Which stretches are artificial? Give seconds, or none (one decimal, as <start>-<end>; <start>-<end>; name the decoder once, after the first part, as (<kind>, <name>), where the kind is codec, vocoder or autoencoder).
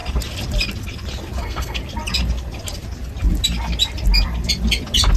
1.4-1.8 (codec, SNAC)